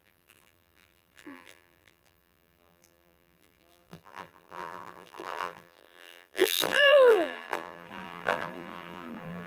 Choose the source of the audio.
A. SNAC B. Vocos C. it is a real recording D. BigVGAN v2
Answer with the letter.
D